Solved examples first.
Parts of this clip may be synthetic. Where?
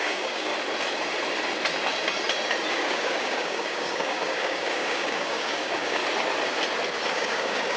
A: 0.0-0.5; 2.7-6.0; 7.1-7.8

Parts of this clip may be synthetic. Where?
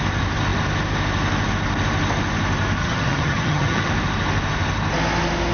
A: 2.8-3.9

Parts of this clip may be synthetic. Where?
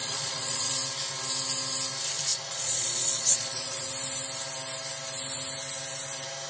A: 0.0-0.7; 2.3-3.8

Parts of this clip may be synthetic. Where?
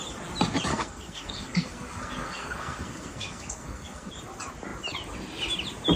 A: 0.7-4.1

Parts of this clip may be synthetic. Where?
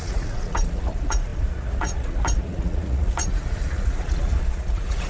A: 0.0-5.1